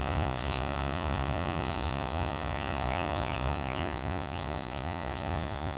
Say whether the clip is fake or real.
fake